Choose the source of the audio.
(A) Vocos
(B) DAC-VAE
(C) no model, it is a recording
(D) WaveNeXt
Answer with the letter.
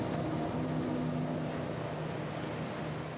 C